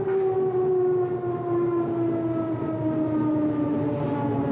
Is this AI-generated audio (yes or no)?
no